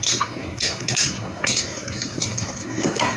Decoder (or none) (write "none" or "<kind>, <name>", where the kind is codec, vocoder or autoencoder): codec, SNAC